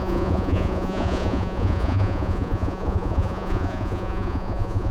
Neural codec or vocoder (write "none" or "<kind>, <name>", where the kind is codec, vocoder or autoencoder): vocoder, Vocos